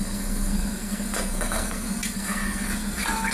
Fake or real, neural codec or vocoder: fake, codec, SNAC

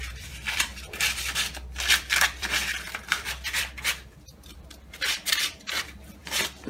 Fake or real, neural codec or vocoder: fake, vocoder, BigVGAN v2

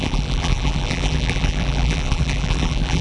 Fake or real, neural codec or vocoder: fake, vocoder, BigVGAN v2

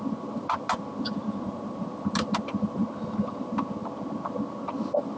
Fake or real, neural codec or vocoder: real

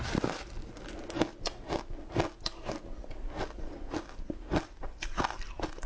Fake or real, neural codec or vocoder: real